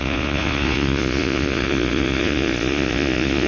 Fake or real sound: fake